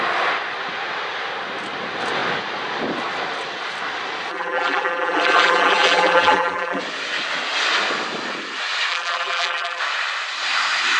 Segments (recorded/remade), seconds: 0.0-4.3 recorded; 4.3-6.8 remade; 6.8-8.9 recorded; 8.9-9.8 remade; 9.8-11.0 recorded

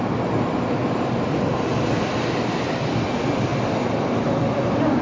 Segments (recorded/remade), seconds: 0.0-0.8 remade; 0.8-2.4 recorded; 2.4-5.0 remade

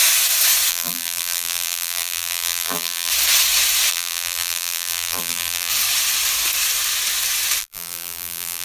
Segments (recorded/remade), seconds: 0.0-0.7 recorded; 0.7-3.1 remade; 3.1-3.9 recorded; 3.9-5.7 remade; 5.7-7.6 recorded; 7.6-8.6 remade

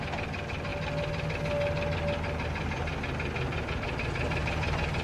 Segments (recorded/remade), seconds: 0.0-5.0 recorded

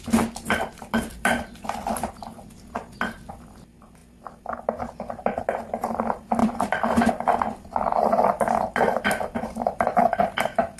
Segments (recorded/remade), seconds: 0.0-0.8 recorded; 0.8-1.4 remade; 1.4-6.4 recorded; 6.4-7.1 remade; 7.1-10.8 recorded

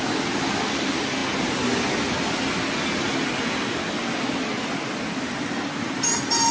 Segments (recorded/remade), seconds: 0.0-1.2 remade; 1.2-5.1 recorded; 5.1-6.5 remade